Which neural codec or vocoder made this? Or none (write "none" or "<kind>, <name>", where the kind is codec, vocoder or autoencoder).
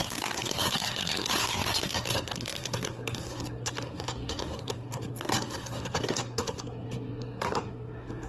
codec, SNAC